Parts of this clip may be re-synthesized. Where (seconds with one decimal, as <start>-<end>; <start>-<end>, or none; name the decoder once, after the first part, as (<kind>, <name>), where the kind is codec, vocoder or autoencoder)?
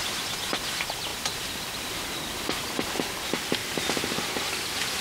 0.0-3.6 (vocoder, BigVGAN v2); 4.5-5.0